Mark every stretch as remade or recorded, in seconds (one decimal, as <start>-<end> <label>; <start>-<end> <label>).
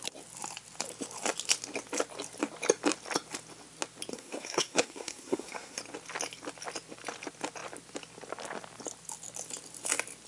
0.0-4.1 recorded; 4.1-5.8 remade; 5.8-10.3 recorded